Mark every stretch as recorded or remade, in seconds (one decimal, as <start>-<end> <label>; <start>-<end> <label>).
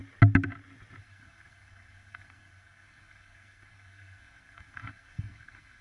0.0-1.0 recorded; 1.0-5.8 remade